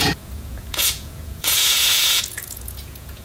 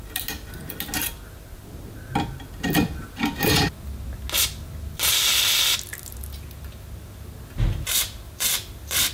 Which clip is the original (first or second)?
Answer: second